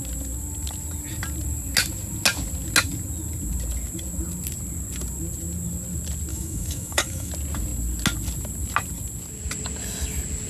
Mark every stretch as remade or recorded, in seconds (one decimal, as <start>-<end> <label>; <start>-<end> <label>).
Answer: 0.0-6.3 recorded; 6.3-7.3 remade; 7.3-10.5 recorded